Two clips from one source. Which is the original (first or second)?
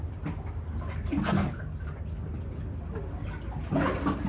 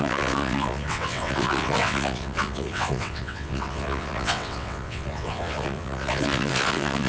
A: first